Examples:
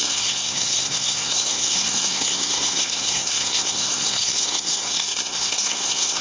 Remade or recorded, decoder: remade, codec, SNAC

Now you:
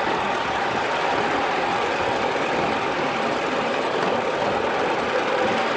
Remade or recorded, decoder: recorded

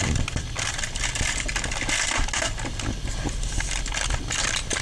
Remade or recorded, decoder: recorded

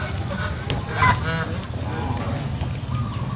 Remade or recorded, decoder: recorded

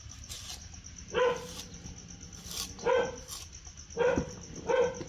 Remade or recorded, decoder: recorded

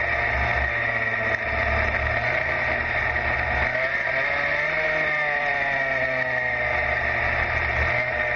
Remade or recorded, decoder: recorded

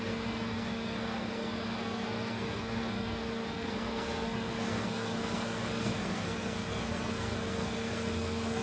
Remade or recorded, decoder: remade, codec, SNAC